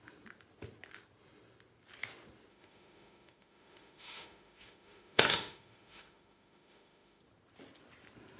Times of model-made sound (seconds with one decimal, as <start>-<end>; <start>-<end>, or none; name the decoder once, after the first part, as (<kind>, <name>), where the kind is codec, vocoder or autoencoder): 2.5-7.2 (autoencoder, DAC-VAE)